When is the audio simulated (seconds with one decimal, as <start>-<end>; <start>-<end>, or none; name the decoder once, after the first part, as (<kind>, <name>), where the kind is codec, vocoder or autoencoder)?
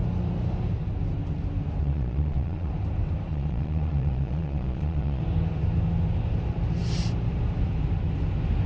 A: 1.8-2.7 (vocoder, Vocos); 3.3-5.2